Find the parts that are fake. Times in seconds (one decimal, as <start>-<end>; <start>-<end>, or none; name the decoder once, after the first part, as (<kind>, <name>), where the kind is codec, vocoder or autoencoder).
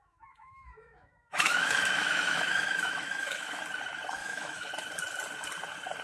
0.0-3.6 (autoencoder, DAC-VAE); 4.2-4.7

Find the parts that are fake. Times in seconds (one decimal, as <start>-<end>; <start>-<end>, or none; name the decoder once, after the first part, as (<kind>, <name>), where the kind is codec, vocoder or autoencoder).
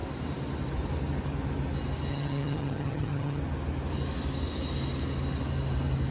2.1-3.4 (vocoder, HiFi-GAN)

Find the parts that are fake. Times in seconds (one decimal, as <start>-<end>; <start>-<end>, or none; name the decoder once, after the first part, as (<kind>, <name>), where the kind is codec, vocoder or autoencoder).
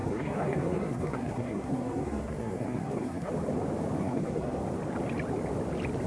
0.0-3.3 (codec, SNAC); 4.0-4.6